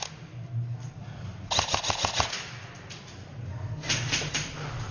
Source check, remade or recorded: recorded